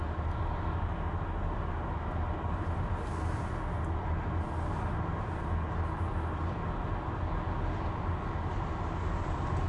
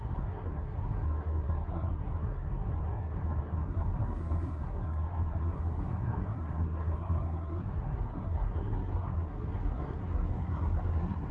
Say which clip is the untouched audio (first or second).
first